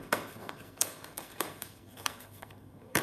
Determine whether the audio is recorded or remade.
remade